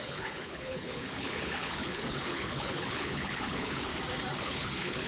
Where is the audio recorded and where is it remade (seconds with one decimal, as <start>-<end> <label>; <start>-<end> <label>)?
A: 0.0-3.9 remade; 3.9-4.4 recorded; 4.4-5.1 remade